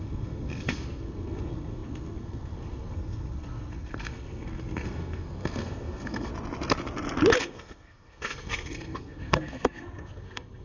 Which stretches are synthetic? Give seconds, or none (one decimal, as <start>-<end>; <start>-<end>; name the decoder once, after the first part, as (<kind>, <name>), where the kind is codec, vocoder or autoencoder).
0.0-6.3 (codec, SNAC); 7.4-10.6

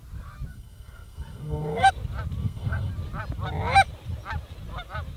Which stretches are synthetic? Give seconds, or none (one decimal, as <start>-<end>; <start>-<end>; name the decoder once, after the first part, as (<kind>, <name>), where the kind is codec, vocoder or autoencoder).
0.5-1.9 (codec, SNAC); 2.4-2.9

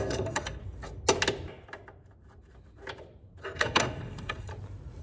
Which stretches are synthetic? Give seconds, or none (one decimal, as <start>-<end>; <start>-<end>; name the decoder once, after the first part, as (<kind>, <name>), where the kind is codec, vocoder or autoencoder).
0.0-0.6 (codec, SNAC); 3.4-4.5

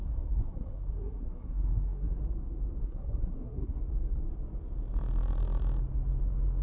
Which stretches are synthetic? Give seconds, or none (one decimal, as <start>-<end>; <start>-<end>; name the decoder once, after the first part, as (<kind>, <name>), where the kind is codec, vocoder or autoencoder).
0.0-2.2 (codec, SNAC); 2.8-3.8

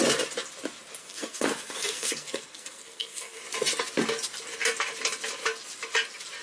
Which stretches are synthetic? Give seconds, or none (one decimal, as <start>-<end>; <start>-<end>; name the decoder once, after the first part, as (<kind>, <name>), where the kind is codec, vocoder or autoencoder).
1.0-3.4 (codec, SNAC)

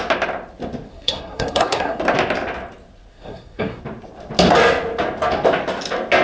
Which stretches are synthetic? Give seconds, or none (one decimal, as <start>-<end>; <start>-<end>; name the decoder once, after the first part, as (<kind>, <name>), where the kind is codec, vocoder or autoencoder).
0.9-2.0 (codec, SNAC); 3.1-3.8

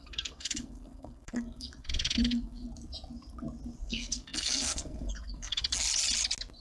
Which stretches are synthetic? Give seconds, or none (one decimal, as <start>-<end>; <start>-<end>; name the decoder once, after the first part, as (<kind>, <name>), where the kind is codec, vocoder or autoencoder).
0.0-2.6 (codec, SNAC); 3.8-5.6